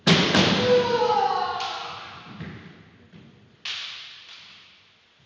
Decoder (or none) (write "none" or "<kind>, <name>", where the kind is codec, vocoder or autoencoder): none